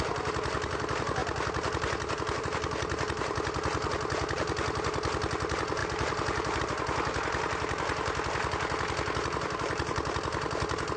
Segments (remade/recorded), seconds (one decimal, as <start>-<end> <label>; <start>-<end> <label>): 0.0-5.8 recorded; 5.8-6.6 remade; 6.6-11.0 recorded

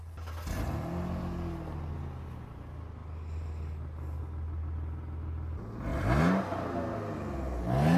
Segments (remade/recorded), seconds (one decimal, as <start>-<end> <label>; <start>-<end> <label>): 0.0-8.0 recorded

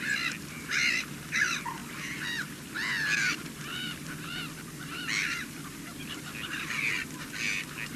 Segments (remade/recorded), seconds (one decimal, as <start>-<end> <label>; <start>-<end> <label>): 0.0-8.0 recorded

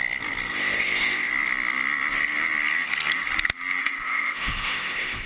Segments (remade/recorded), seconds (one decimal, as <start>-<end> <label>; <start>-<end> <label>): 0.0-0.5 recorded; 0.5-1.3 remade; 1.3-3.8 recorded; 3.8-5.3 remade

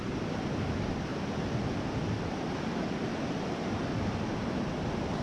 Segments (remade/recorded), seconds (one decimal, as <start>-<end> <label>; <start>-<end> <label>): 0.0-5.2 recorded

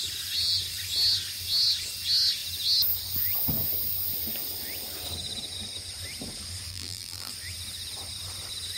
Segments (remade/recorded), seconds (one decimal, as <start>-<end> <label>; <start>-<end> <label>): 0.0-6.7 recorded; 6.7-7.3 remade; 7.3-8.8 recorded

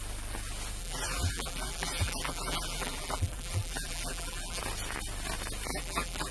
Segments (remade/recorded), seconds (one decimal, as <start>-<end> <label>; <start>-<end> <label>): 0.0-0.8 recorded; 0.8-4.6 remade; 4.6-5.7 recorded; 5.7-6.3 remade

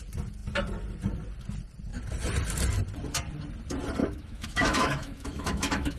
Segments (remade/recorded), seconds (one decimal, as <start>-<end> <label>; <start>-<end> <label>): 0.0-4.0 recorded; 4.0-6.0 remade